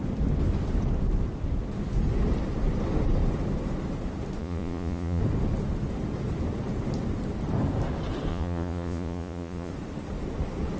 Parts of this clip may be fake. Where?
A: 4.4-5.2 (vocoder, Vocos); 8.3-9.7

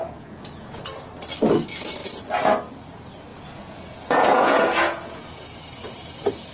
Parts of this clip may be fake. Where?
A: 0.0-0.8 (vocoder, Vocos); 3.3-5.3

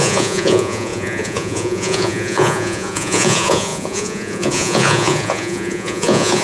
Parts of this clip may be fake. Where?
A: 0.0-6.4 (vocoder, Vocos)

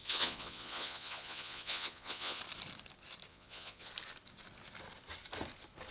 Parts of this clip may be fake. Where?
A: 0.0-2.4 (vocoder, Vocos); 3.3-3.9

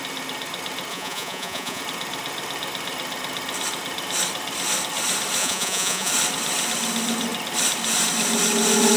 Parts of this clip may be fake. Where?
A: 0.9-1.8 (vocoder, Vocos); 5.4-6.1